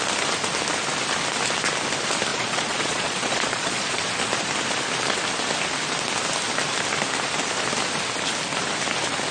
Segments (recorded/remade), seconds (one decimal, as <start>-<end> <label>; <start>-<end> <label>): 0.0-2.3 recorded; 2.3-4.1 remade; 4.1-9.3 recorded